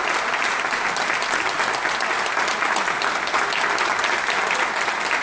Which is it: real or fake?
real